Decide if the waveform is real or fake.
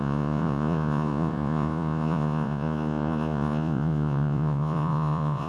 fake